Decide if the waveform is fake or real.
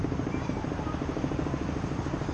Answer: fake